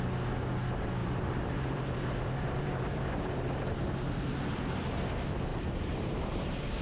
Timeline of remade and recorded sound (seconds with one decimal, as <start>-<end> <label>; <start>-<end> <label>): 0.0-1.0 recorded; 1.0-3.9 remade; 3.9-5.5 recorded; 5.5-6.8 remade

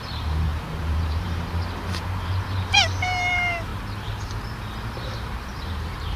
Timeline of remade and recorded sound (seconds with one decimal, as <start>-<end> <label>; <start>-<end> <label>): 0.0-3.7 remade; 3.7-4.8 recorded; 4.8-6.2 remade

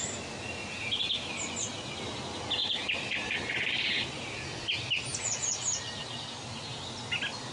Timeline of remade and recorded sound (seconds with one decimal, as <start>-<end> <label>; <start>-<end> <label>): 0.0-2.6 recorded; 2.6-3.4 remade; 3.4-7.5 recorded

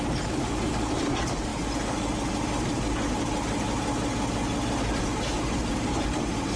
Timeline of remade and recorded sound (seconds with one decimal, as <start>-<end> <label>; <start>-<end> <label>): 0.0-1.5 remade; 1.5-5.5 recorded; 5.5-6.6 remade

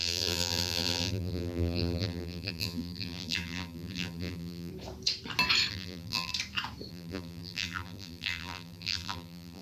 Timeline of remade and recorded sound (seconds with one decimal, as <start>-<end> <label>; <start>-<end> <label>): 0.0-4.7 remade; 4.7-5.7 recorded; 5.7-6.3 remade; 6.3-6.9 recorded; 6.9-9.6 remade